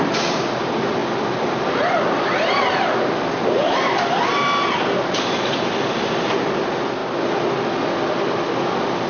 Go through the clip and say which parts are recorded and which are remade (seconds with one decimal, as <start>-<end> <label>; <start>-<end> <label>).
0.0-9.1 recorded